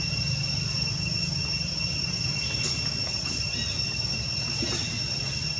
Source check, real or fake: real